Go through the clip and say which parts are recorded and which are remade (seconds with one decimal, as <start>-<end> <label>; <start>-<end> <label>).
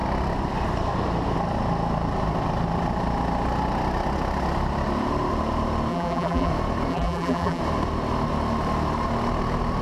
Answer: 0.0-5.9 recorded; 5.9-6.5 remade; 6.5-6.9 recorded; 6.9-7.6 remade; 7.6-9.8 recorded